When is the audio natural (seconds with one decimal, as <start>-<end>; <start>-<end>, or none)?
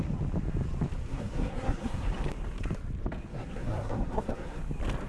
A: 0.0-1.1; 2.1-3.3; 4.6-5.1